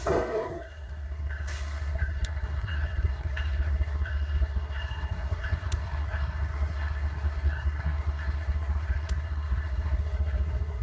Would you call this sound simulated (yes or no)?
yes